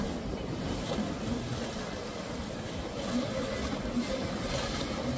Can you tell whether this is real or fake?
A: real